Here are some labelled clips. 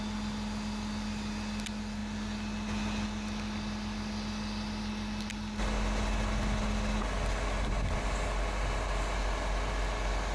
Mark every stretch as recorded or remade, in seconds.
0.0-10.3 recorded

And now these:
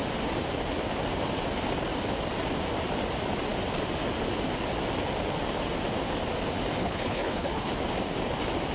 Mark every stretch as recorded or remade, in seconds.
0.0-6.8 recorded; 6.8-7.7 remade; 7.7-8.7 recorded

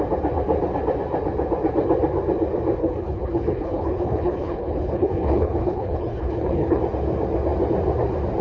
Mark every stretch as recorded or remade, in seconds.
0.0-2.8 recorded; 2.8-6.8 remade; 6.8-8.4 recorded

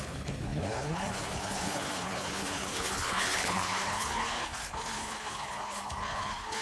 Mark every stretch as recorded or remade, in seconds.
0.0-6.6 remade

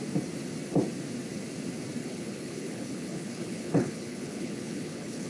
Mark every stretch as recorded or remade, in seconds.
0.0-2.0 recorded; 2.0-5.3 remade

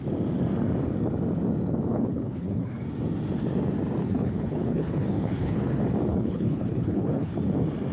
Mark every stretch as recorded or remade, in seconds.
0.0-1.9 recorded; 1.9-2.8 remade; 2.8-4.0 recorded; 4.0-5.6 remade; 5.6-6.1 recorded; 6.1-7.3 remade; 7.3-7.9 recorded

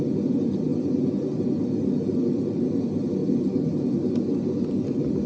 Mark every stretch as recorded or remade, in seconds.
0.0-5.3 recorded

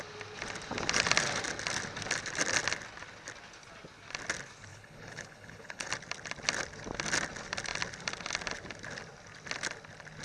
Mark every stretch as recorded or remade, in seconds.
0.0-4.7 recorded; 4.7-5.9 remade; 5.9-10.2 recorded